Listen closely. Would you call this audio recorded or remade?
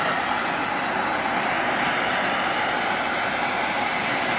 recorded